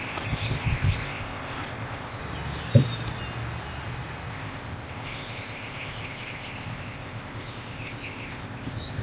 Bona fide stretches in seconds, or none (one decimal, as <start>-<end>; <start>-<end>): 2.2-4.3